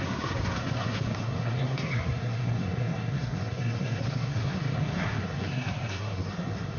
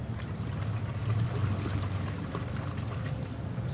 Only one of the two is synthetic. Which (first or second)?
first